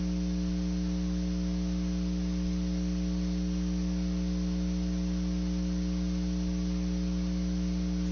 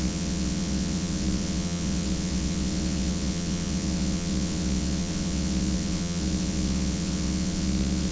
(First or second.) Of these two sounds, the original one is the first